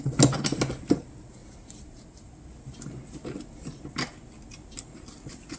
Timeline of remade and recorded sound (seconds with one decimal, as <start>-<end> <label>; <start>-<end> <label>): 0.0-5.6 recorded